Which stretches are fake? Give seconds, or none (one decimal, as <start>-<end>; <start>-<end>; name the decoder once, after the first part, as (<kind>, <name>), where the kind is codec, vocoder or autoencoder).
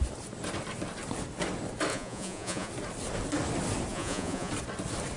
1.9-2.7 (vocoder, Vocos); 3.9-4.5